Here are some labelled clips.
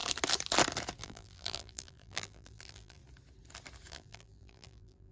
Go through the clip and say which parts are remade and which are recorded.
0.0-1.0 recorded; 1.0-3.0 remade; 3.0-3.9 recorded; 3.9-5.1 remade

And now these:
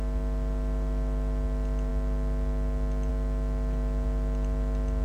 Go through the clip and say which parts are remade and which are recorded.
0.0-5.0 recorded

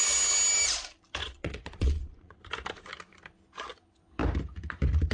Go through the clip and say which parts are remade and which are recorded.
0.0-1.2 recorded; 1.2-2.5 remade; 2.5-5.1 recorded

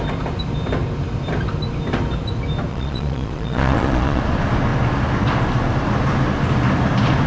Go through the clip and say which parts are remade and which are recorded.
0.0-2.7 recorded; 2.7-4.2 remade; 4.2-7.3 recorded